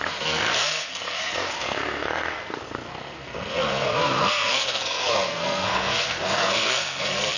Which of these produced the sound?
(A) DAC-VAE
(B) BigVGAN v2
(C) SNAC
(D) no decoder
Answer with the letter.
C